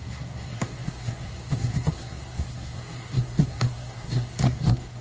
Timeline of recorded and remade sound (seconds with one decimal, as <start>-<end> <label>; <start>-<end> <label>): 0.0-5.0 remade